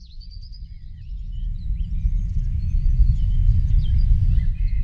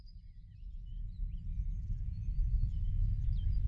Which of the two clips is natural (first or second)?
second